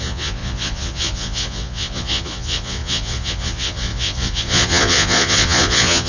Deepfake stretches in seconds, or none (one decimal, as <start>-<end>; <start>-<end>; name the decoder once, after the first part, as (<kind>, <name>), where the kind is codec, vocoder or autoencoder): 0.0-6.1 (vocoder, Vocos)